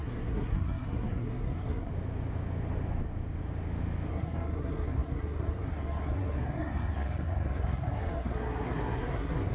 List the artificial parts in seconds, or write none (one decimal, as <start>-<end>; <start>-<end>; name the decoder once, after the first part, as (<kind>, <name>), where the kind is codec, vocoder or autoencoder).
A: 0.0-1.9 (codec, SNAC); 4.1-9.5